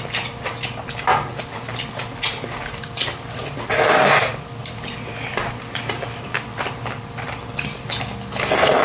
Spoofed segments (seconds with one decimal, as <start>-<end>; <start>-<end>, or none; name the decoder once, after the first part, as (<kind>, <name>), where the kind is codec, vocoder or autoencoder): none